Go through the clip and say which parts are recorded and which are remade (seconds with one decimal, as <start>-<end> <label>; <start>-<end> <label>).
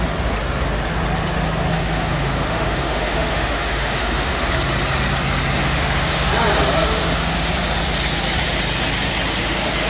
0.0-1.7 recorded; 1.7-4.5 remade; 4.5-5.6 recorded; 5.6-6.3 remade; 6.3-6.8 recorded; 6.8-7.5 remade; 7.5-9.9 recorded